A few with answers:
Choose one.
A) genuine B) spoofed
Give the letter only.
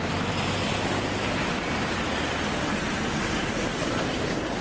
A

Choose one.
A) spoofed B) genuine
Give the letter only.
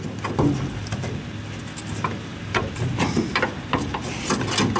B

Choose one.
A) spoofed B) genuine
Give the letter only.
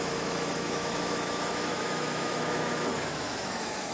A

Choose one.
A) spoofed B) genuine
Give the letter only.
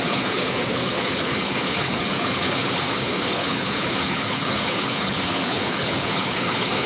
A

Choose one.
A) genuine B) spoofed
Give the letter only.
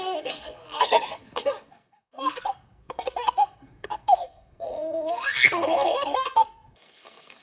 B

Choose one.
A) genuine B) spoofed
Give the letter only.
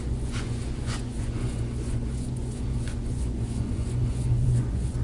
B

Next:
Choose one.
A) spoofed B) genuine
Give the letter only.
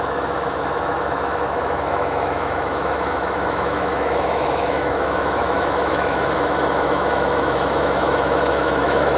A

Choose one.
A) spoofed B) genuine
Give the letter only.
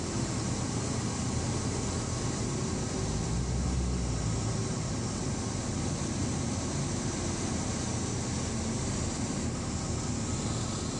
B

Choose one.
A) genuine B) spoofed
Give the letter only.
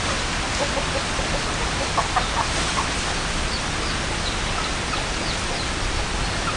A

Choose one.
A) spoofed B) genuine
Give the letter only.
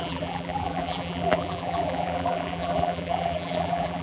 A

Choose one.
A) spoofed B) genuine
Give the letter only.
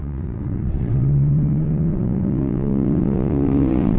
A